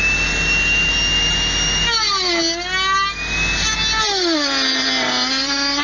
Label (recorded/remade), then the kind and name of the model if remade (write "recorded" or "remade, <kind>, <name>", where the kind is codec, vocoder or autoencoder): recorded